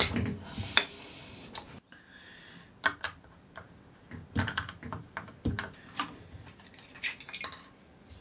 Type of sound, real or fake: fake